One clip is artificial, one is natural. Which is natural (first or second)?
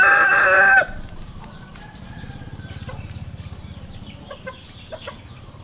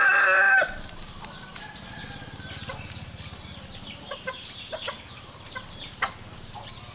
second